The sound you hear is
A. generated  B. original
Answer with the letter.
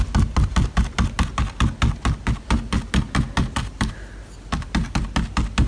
B